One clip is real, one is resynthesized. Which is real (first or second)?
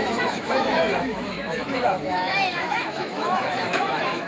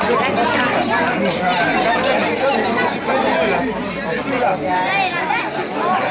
second